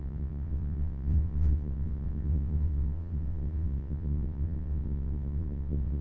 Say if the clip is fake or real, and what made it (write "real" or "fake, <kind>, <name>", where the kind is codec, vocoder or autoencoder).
fake, vocoder, WaveNeXt